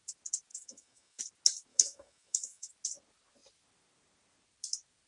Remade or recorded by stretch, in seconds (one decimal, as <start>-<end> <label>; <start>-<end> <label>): 0.0-0.5 recorded; 0.5-1.2 remade; 1.2-1.7 recorded; 1.7-2.7 remade; 2.7-5.1 recorded